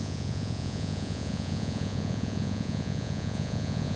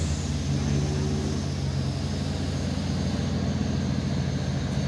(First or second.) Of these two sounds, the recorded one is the second